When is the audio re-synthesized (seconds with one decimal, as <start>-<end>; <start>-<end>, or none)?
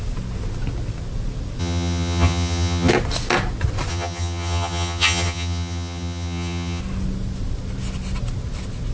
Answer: 1.6-2.9; 3.9-6.8